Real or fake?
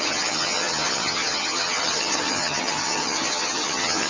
fake